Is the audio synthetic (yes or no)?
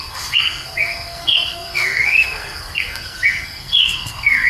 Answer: yes